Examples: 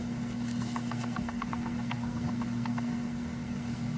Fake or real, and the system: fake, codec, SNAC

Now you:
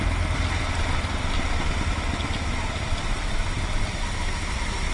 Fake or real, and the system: real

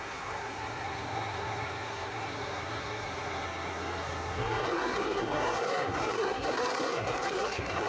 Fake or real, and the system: fake, codec, SNAC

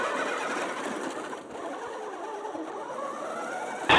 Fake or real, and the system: real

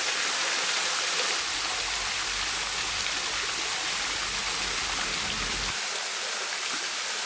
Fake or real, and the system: real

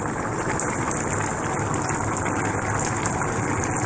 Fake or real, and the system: real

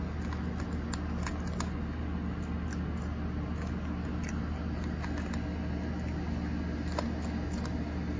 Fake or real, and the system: real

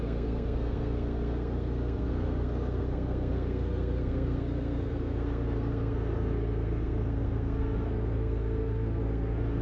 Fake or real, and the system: fake, codec, SNAC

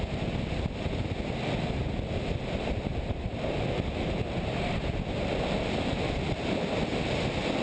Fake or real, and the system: real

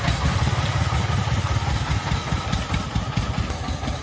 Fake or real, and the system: real